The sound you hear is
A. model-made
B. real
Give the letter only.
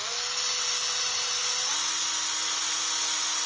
B